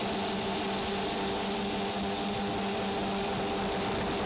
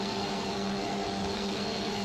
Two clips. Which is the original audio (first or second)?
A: first